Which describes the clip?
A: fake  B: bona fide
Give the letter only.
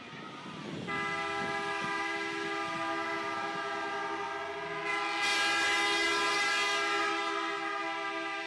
B